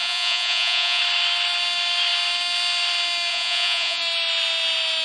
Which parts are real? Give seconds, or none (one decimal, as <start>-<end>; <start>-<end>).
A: 1.0-3.3; 4.0-5.0